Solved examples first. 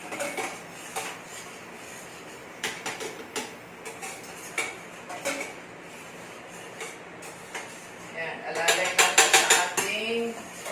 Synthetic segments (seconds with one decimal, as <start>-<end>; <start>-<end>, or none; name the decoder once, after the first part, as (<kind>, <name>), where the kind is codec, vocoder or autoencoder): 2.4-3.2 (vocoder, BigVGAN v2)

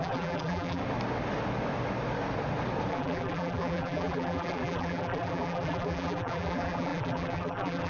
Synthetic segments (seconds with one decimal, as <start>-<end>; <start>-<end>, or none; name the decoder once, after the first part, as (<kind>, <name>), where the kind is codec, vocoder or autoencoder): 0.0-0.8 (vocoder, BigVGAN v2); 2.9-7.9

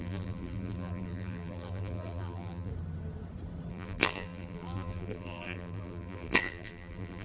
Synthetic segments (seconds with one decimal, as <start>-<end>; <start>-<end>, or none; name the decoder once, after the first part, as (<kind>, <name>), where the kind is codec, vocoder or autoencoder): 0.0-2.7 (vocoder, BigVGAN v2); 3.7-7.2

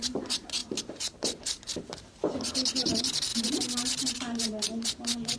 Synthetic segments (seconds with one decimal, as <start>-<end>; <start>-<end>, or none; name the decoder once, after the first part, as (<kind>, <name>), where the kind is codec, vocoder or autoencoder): 0.0-3.3 (vocoder, BigVGAN v2); 3.9-5.4

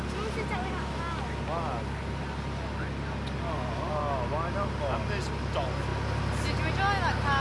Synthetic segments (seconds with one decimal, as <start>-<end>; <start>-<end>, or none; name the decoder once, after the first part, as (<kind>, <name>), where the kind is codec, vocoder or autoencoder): none